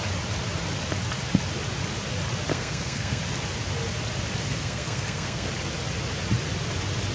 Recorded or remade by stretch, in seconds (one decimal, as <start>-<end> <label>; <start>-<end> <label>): 0.0-2.5 recorded; 2.5-3.2 remade; 3.2-4.5 recorded; 4.5-5.5 remade; 5.5-7.1 recorded